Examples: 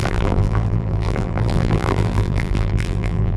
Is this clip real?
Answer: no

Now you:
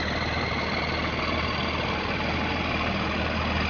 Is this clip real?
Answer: yes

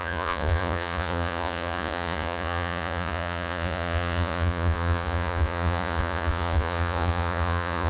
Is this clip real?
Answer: no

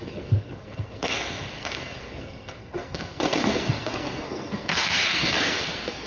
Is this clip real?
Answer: no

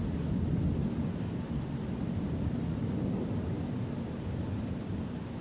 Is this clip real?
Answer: no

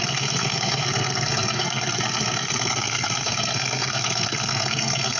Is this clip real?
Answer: no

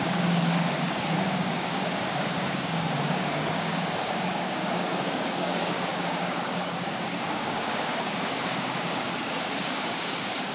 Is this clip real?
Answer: no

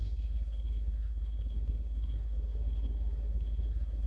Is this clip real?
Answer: no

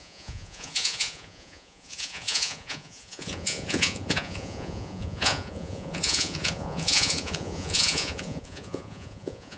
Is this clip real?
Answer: no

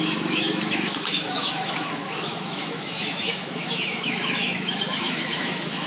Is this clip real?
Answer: no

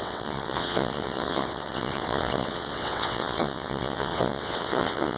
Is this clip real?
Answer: no